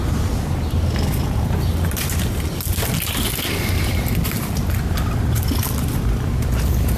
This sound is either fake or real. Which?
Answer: real